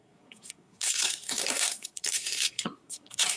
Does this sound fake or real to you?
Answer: fake